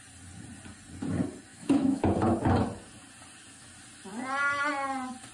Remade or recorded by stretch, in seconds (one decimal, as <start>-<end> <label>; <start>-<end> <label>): 0.0-1.5 recorded; 1.5-2.1 remade; 2.1-5.3 recorded